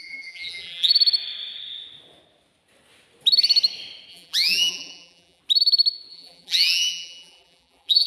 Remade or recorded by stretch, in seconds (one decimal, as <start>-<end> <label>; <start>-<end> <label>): 0.0-0.9 remade; 0.9-4.1 recorded; 4.1-5.4 remade; 5.4-6.1 recorded; 6.1-8.1 remade

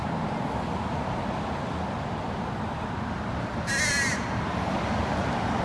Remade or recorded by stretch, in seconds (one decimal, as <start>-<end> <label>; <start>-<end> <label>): 0.0-3.4 recorded; 3.4-5.6 remade

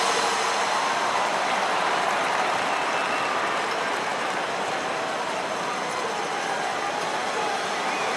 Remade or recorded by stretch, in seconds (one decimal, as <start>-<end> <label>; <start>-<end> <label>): 0.0-8.2 recorded

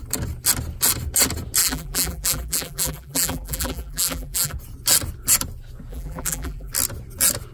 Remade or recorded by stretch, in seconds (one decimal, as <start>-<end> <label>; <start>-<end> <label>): 0.0-1.6 recorded; 1.6-4.6 remade; 4.6-5.9 recorded; 5.9-6.7 remade; 6.7-7.5 recorded

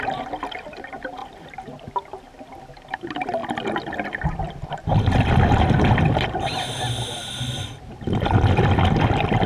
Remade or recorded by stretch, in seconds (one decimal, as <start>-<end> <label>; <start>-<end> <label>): 0.0-1.2 recorded; 1.2-2.2 remade; 2.2-9.5 recorded

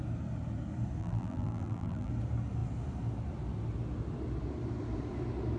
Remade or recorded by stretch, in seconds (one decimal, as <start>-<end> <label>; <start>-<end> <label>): 0.0-1.0 recorded; 1.0-2.1 remade; 2.1-5.6 recorded